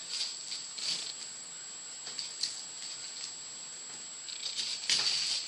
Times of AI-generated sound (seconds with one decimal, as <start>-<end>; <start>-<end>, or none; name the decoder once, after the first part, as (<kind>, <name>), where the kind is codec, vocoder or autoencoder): none